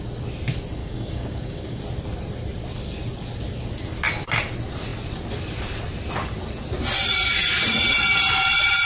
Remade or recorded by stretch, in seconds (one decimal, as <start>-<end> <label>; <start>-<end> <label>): 0.0-0.8 recorded; 0.8-1.8 remade; 1.8-8.9 recorded